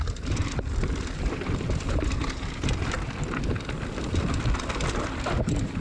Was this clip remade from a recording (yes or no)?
no